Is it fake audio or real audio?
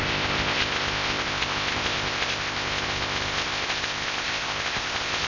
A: fake